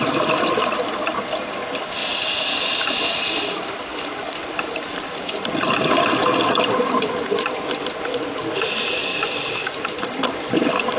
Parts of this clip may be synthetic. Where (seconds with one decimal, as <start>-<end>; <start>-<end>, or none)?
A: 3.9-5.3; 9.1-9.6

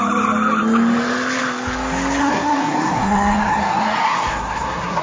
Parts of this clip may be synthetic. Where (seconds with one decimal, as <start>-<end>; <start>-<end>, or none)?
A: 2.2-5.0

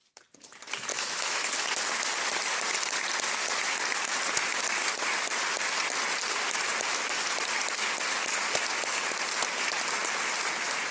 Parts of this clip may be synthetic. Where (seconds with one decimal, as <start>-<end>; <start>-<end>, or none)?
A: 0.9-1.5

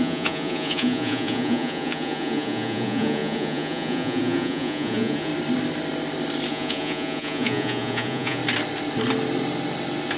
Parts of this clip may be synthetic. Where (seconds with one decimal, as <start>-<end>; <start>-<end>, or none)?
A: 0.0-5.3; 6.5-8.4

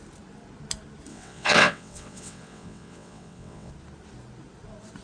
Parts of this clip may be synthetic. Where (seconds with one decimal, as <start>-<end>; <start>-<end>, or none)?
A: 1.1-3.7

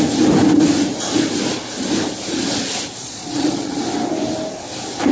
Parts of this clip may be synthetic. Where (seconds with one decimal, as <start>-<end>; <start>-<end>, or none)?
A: 3.0-3.8

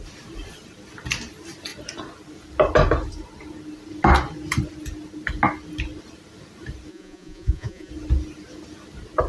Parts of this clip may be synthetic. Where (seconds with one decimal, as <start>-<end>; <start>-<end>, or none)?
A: 6.9-7.9